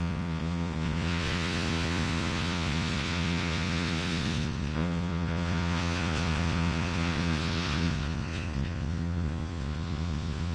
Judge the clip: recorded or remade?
remade